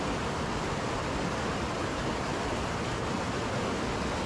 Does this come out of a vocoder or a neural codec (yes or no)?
no